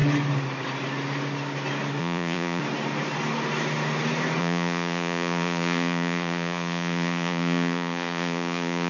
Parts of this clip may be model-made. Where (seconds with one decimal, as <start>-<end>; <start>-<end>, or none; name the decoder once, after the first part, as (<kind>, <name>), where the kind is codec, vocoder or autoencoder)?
2.0-2.6 (vocoder, Vocos); 4.4-8.9

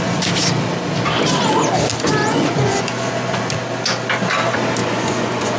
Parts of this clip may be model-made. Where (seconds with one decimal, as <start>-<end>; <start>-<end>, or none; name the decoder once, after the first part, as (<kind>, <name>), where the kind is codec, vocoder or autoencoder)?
2.2-3.5 (vocoder, Vocos); 4.8-5.6

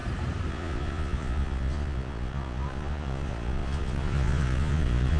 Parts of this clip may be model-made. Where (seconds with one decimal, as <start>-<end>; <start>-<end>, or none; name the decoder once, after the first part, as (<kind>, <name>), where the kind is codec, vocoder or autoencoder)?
0.5-5.2 (vocoder, Vocos)

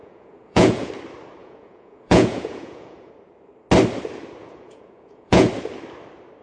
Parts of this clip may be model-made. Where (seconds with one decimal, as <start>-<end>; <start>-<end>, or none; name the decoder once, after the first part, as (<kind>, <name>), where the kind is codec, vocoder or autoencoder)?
0.0-0.9 (vocoder, Vocos); 1.4-3.1; 4.4-5.5

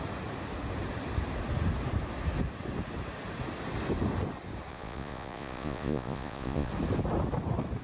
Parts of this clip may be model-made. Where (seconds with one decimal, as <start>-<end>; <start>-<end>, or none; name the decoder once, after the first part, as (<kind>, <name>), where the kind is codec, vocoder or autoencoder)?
4.7-6.7 (vocoder, Vocos)

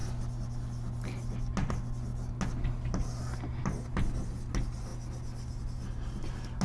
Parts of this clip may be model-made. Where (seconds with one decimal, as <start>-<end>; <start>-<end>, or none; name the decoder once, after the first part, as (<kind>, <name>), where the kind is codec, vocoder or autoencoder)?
none

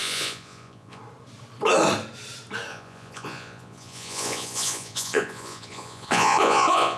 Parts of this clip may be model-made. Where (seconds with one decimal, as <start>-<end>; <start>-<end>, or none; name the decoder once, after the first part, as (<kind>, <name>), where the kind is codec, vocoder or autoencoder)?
0.0-1.0 (vocoder, Vocos); 2.7-7.0